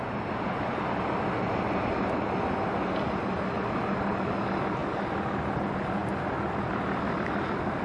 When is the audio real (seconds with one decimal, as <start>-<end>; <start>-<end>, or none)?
0.0-7.8